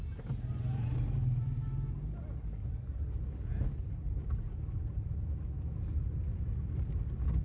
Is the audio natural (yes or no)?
yes